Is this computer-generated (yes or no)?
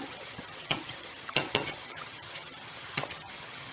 yes